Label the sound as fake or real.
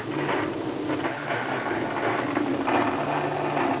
real